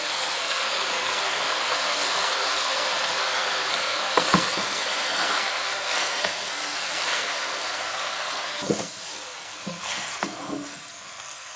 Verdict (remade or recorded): remade